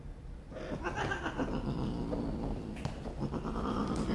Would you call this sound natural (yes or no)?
yes